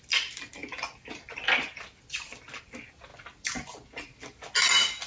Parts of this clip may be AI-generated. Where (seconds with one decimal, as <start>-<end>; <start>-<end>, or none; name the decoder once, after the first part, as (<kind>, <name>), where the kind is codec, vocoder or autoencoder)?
none